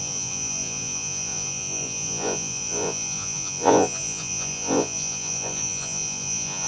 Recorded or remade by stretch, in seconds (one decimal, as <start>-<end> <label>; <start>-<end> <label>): 0.0-6.7 remade